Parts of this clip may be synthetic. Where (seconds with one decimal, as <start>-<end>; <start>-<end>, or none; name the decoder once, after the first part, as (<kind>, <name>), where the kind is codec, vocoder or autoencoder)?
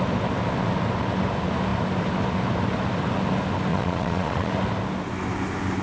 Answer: 3.7-4.5 (vocoder, Vocos)